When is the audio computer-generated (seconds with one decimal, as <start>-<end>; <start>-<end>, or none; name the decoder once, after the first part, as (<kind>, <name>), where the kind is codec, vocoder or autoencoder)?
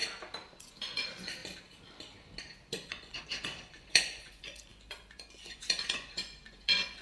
0.6-1.4 (vocoder, Vocos); 2.4-7.0